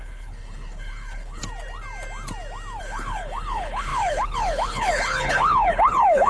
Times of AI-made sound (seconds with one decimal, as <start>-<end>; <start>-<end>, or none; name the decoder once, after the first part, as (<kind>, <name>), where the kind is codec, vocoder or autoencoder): 0.0-1.4 (codec, HILCodec); 2.8-6.3